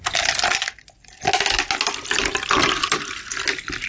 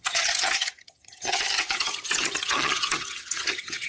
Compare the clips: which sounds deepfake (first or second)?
second